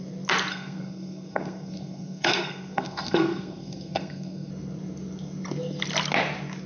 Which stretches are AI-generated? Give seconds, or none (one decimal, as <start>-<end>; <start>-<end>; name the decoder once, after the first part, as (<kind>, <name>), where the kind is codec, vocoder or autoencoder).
0.5-4.5 (codec, SNAC)